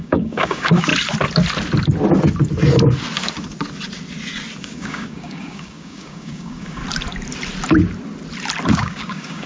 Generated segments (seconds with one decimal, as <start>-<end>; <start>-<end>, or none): 0.0-0.9; 4.6-6.8; 8.7-9.5